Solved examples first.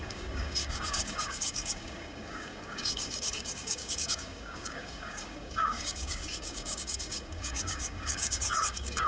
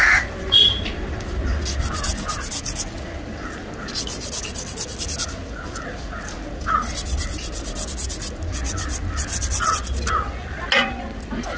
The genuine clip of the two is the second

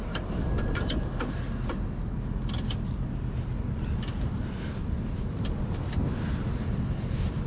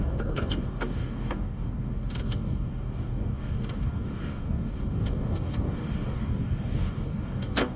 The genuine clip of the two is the first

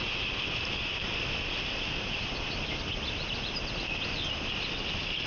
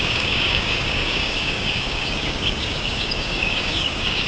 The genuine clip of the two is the first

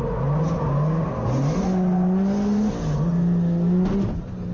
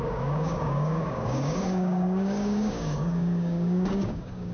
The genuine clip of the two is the first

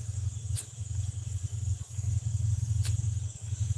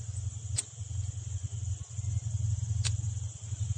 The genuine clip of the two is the second